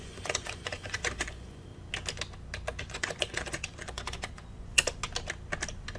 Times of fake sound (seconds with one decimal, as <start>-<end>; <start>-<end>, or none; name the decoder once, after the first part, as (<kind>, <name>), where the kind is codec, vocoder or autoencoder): 0.0-1.7 (vocoder, Vocos); 2.8-5.0